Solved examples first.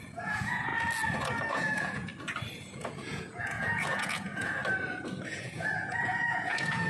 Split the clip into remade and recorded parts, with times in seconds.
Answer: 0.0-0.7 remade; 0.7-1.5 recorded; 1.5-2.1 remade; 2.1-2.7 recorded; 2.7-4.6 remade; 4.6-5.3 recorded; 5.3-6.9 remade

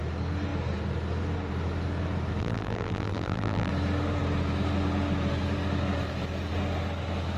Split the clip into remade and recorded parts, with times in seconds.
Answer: 0.0-2.4 recorded; 2.4-3.7 remade; 3.7-7.4 recorded